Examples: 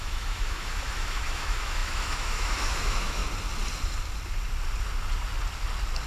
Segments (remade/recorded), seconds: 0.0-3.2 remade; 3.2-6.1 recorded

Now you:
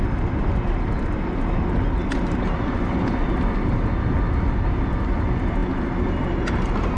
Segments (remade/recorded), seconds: 0.0-2.0 recorded; 2.0-2.8 remade; 2.8-7.0 recorded

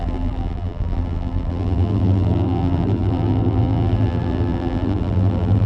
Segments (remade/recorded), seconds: 0.0-5.7 remade

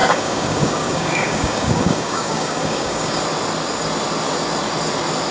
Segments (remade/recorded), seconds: 0.0-3.2 remade; 3.2-5.3 recorded

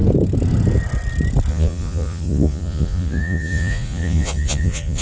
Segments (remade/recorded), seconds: 0.0-1.5 recorded; 1.5-5.0 remade

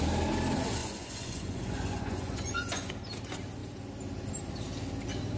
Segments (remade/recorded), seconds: 0.0-0.8 recorded; 0.8-2.9 remade; 2.9-5.4 recorded

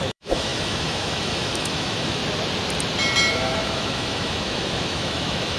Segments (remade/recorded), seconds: 0.0-2.2 remade; 2.2-3.3 recorded; 3.3-5.6 remade